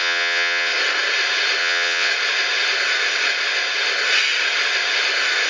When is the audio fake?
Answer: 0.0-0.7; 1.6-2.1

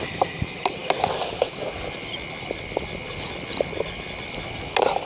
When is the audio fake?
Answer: none

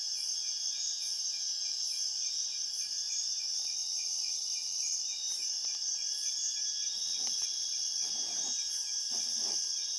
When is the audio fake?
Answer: 3.5-5.0; 7.0-8.1; 9.0-10.0

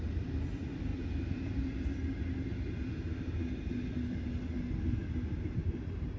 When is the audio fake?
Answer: none

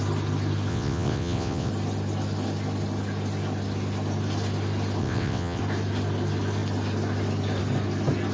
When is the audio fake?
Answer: 0.7-1.7; 5.0-5.6

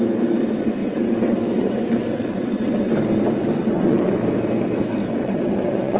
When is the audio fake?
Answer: 0.8-2.9; 3.6-4.1; 5.2-6.0